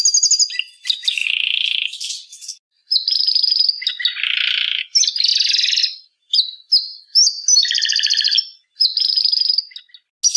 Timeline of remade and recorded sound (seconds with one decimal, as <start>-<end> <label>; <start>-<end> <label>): 0.0-5.3 recorded; 5.3-5.8 remade; 5.8-10.4 recorded